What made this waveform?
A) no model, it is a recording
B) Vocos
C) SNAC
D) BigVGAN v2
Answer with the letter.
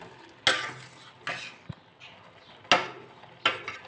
A